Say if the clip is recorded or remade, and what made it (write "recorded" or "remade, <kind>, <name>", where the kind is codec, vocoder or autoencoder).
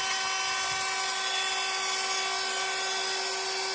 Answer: recorded